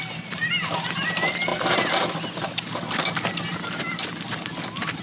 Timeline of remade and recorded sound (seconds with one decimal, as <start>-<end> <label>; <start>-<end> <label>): 0.0-5.0 recorded